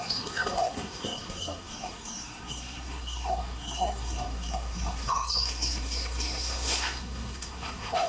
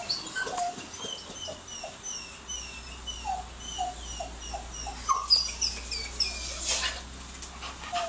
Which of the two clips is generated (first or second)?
first